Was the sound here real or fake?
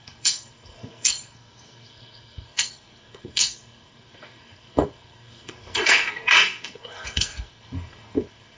fake